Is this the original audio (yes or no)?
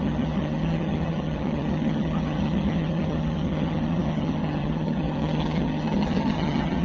no